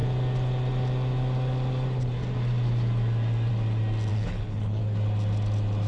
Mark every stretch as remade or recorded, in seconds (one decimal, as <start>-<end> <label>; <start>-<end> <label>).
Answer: 0.0-4.1 recorded; 4.1-4.8 remade; 4.8-5.9 recorded

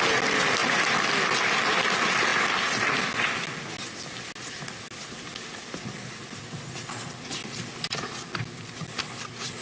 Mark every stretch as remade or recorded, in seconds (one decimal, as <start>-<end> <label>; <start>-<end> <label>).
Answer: 0.0-9.6 recorded